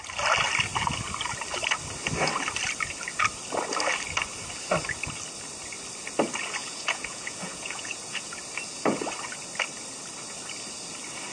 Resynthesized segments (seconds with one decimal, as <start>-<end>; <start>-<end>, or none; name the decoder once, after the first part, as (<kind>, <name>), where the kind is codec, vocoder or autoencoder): 6.6-8.4 (vocoder, Vocos)